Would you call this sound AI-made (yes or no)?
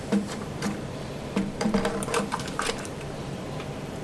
yes